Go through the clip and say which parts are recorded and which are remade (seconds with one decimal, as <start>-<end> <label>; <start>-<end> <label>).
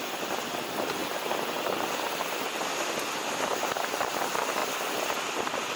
0.0-5.8 recorded